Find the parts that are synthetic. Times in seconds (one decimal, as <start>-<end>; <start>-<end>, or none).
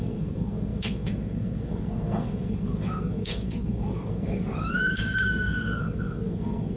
0.0-6.8